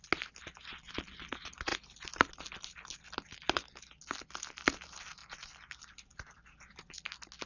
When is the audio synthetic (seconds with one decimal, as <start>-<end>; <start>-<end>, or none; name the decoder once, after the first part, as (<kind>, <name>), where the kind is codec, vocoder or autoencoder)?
1.7-2.3 (vocoder, BigVGAN v2); 5.2-5.8